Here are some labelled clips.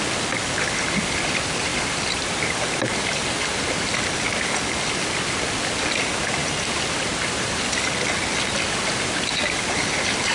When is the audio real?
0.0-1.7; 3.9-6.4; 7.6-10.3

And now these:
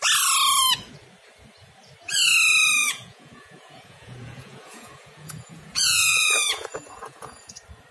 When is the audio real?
0.0-2.8; 7.5-7.9

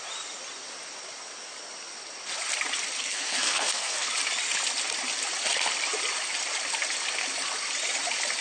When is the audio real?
0.0-3.0; 4.1-8.4

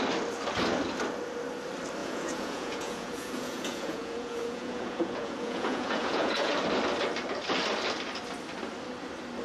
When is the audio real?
0.0-2.0; 6.5-9.4

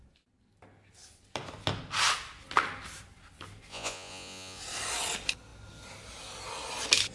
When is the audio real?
0.0-3.7; 4.6-7.1

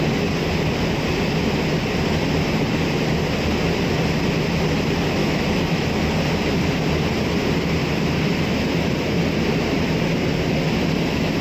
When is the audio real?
0.0-5.2; 5.9-11.4

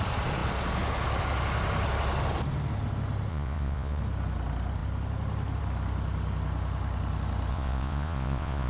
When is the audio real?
0.0-3.3; 4.0-7.5